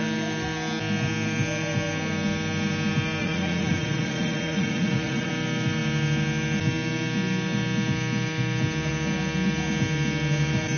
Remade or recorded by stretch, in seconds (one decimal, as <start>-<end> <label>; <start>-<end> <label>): 0.0-3.2 recorded; 3.2-5.3 remade; 5.3-10.8 recorded

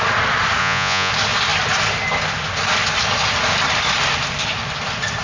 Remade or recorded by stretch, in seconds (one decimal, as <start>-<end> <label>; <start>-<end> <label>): 0.0-0.6 recorded; 0.6-1.1 remade; 1.1-5.2 recorded